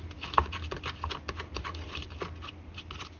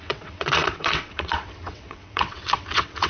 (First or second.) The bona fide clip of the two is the first